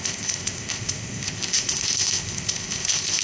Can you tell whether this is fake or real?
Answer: fake